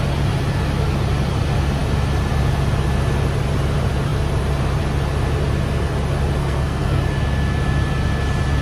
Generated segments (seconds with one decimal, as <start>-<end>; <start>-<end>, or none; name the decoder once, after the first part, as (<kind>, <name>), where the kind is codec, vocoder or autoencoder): 6.4-7.0 (codec, SNAC)